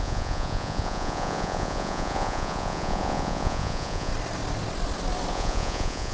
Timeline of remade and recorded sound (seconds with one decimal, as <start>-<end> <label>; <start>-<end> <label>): 0.0-4.1 remade; 4.1-5.3 recorded; 5.3-6.1 remade